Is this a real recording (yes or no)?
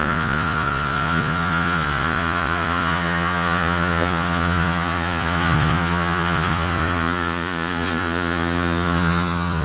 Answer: no